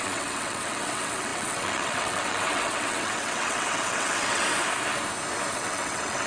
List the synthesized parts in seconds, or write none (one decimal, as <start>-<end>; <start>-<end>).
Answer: 0.0-4.4; 5.5-6.3